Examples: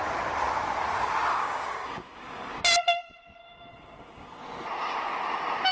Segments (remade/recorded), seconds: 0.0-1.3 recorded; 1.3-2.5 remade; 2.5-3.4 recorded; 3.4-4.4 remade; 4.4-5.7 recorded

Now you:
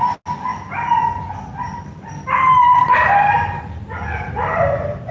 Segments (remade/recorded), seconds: 0.0-5.1 recorded

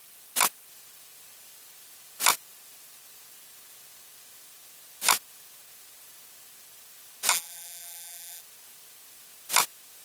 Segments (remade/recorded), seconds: 0.0-7.3 recorded; 7.3-8.4 remade; 8.4-10.0 recorded

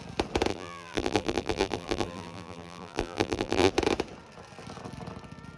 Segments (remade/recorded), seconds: 0.0-0.5 recorded; 0.5-3.7 remade; 3.7-5.6 recorded

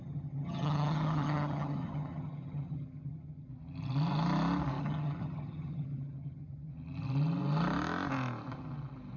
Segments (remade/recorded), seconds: 0.0-3.5 remade; 3.5-4.8 recorded; 4.8-6.7 remade; 6.7-9.2 recorded

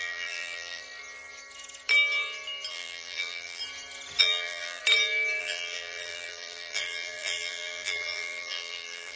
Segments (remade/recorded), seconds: 0.0-0.8 remade; 0.8-2.7 recorded; 2.7-3.6 remade; 3.6-4.2 recorded; 4.2-4.8 remade; 4.8-5.4 recorded; 5.4-9.2 remade